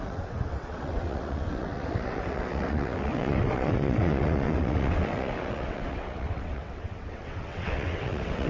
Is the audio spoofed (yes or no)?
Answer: yes